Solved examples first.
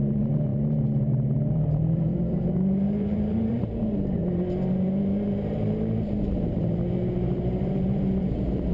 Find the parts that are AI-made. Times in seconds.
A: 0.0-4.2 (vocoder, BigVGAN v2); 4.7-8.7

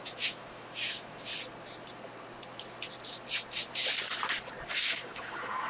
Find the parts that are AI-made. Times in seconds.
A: 0.0-1.3 (autoencoder, DAC-VAE); 4.7-5.7

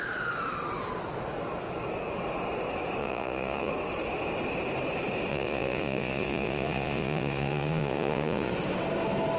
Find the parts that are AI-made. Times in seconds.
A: 3.0-3.7 (vocoder, Vocos); 5.3-8.5

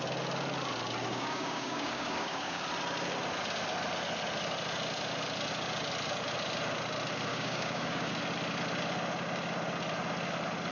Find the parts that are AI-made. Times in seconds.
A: 1.1-2.6 (codec, DAC); 7.3-8.1

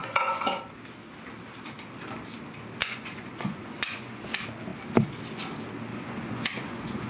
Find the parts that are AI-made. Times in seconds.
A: 0.0-0.6 (vocoder, Vocos); 2.8-4.3; 5.9-7.1

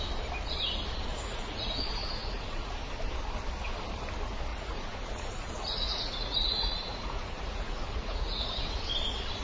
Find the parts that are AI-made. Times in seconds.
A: 1.1-1.8 (vocoder, Vocos); 2.2-2.7; 4.5-8.7